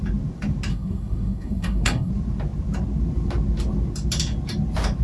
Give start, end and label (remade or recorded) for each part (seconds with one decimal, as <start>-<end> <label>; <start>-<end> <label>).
0.0-0.7 recorded; 0.7-2.1 remade; 2.1-5.0 recorded